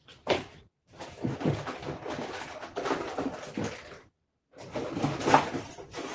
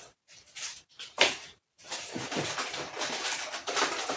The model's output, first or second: second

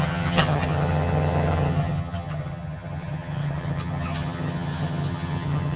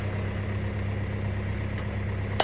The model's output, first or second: first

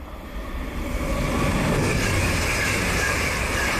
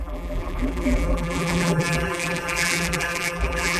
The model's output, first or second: second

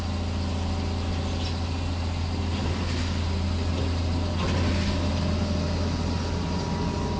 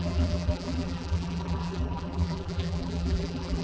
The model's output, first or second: second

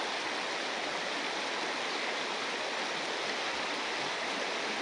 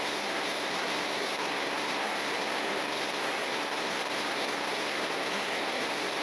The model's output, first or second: second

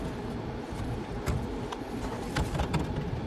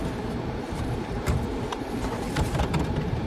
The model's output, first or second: second